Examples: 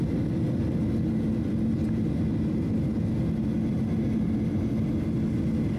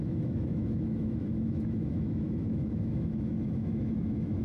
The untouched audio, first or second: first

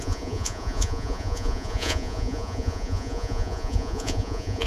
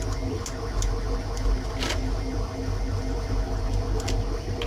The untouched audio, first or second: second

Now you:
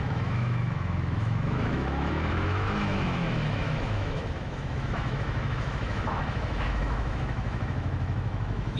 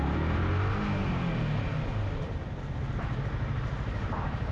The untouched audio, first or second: second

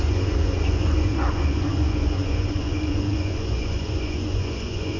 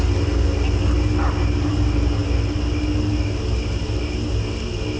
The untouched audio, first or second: second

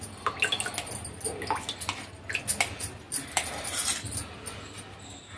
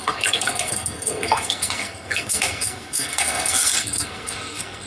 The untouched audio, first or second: first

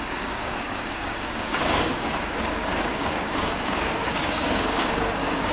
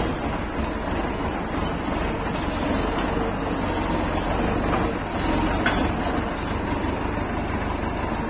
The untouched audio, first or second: second